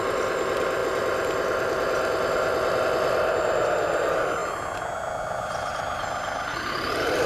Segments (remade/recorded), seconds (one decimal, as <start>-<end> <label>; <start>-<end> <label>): 0.0-7.3 recorded